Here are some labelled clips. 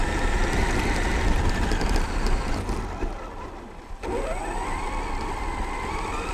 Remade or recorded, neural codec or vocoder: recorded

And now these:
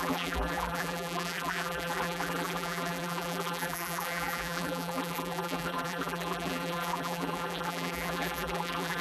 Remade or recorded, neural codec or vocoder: remade, vocoder, BigVGAN v2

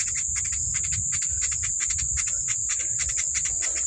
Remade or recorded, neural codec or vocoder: recorded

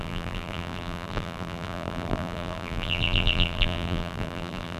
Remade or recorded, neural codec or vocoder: remade, vocoder, BigVGAN v2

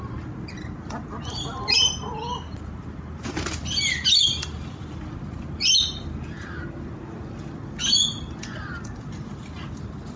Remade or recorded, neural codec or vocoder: recorded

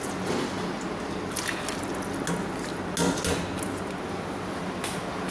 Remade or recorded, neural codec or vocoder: recorded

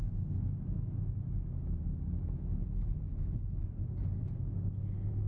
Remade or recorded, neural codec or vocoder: remade, autoencoder, DAC-VAE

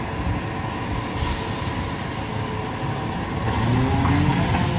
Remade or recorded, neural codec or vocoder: recorded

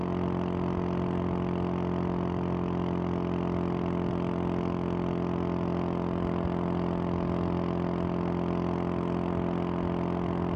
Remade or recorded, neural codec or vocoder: recorded